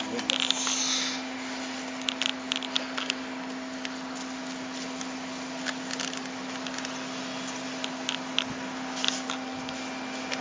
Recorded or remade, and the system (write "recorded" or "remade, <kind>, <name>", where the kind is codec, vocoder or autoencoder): recorded